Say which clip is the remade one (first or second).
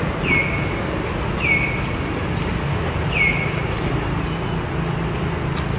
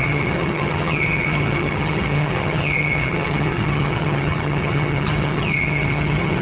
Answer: second